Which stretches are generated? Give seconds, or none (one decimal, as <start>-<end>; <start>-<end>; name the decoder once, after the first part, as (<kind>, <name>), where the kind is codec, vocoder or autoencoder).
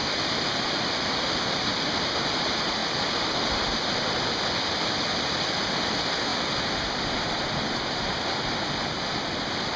none